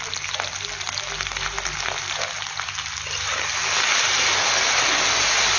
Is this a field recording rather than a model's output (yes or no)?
yes